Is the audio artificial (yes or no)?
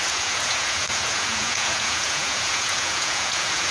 yes